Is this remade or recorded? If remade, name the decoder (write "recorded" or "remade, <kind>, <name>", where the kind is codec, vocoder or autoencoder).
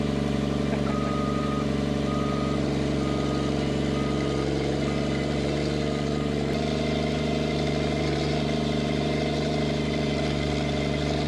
remade, vocoder, BigVGAN v2